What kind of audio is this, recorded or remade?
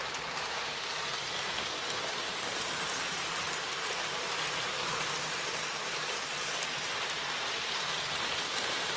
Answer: remade